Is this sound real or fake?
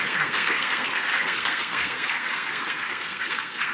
fake